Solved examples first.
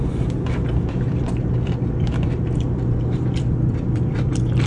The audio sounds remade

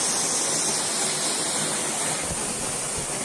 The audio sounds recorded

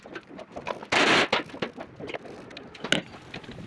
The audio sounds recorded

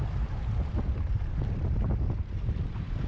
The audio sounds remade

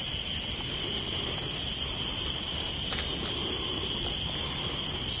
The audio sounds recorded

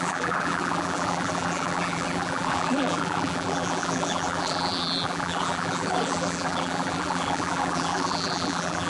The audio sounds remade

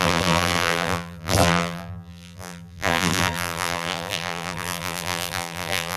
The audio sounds remade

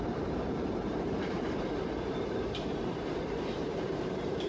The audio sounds remade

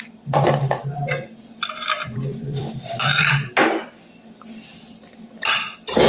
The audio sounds remade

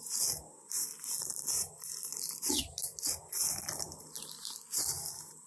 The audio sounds recorded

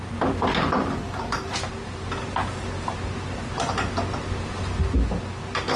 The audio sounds recorded